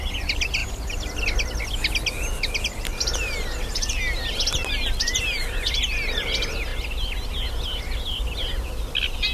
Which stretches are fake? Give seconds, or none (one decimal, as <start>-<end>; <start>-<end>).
none